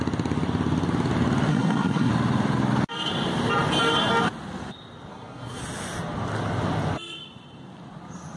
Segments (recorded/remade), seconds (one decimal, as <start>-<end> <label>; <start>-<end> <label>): 0.0-1.5 recorded; 1.5-2.1 remade; 2.1-5.1 recorded; 5.1-5.6 remade; 5.6-8.4 recorded